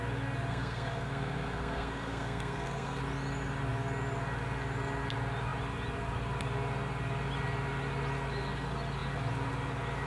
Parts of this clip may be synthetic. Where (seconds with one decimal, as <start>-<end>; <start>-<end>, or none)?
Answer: 0.5-3.0